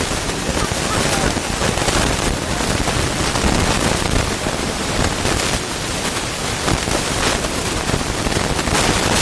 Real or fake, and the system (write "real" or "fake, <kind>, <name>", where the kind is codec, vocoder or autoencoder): fake, vocoder, BigVGAN v2